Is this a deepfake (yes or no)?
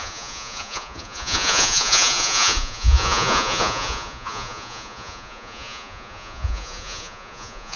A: yes